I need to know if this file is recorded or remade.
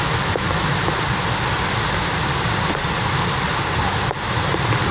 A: recorded